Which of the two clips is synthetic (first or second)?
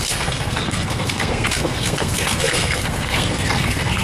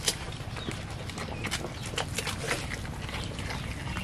first